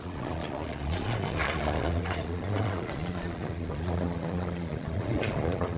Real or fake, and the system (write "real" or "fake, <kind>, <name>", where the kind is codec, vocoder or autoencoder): fake, vocoder, Vocos